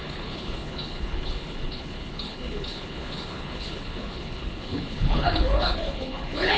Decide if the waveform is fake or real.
fake